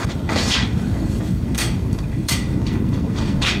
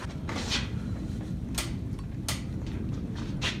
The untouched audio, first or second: second